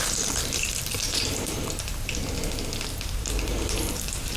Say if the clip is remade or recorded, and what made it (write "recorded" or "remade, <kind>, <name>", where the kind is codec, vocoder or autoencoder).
remade, vocoder, BigVGAN v2